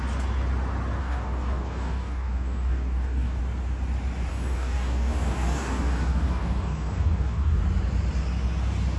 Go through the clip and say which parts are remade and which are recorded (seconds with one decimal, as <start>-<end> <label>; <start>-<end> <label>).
0.0-1.0 recorded; 1.0-3.4 remade; 3.4-4.3 recorded; 4.3-7.6 remade; 7.6-9.0 recorded